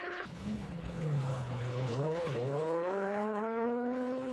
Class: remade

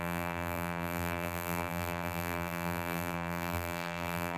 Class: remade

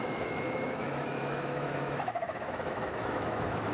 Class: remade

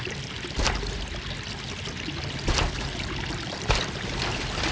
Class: recorded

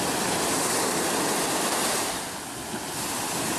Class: recorded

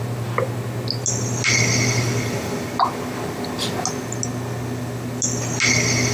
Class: recorded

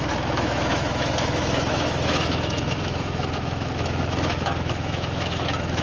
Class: remade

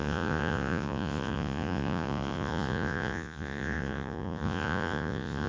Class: remade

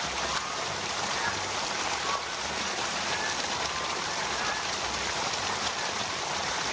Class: remade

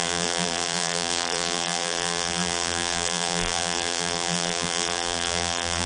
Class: remade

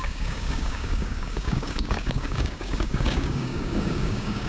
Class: remade